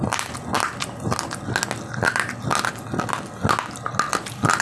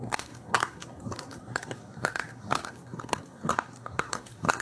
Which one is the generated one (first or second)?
second